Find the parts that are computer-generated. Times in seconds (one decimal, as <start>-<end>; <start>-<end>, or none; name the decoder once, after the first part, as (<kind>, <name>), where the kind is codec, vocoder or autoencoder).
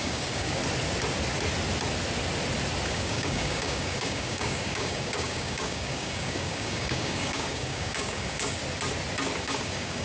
0.0-0.6 (codec, DAC); 2.9-8.6; 9.4-10.0